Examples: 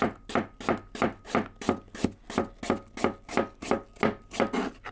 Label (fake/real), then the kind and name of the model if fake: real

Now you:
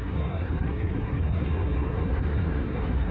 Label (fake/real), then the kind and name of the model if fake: fake, codec, SNAC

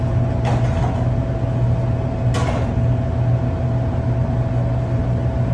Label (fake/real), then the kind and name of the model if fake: real